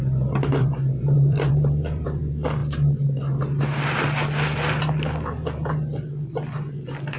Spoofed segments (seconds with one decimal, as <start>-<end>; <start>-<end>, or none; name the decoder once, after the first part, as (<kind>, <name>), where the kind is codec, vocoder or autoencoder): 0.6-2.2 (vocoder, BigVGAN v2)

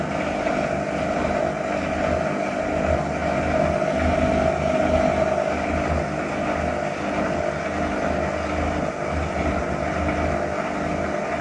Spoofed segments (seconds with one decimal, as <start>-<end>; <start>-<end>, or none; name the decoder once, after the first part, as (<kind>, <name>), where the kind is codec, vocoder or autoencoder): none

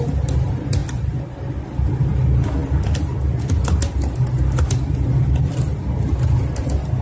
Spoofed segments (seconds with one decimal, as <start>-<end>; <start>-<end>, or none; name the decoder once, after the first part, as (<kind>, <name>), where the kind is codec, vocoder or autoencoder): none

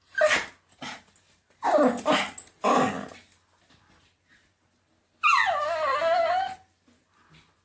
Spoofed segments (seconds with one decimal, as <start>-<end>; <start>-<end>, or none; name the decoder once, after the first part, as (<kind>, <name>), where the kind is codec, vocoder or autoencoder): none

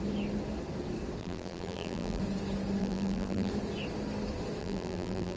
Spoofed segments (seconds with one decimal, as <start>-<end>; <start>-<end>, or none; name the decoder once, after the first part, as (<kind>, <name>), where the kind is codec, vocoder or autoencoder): 1.2-2.2 (vocoder, BigVGAN v2); 2.8-3.5; 4.6-5.4